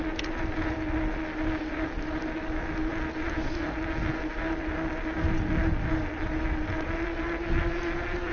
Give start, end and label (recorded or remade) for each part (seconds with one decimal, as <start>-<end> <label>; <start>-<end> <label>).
0.0-8.3 recorded